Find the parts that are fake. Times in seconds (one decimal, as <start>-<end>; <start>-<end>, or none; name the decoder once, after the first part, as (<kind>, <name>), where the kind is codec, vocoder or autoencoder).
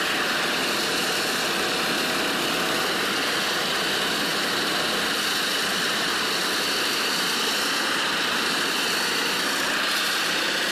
none